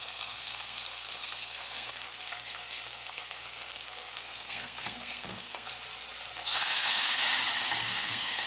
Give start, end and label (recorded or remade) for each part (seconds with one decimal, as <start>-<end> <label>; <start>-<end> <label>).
0.0-5.7 remade; 5.7-6.3 recorded; 6.3-7.2 remade; 7.2-7.8 recorded; 7.8-8.5 remade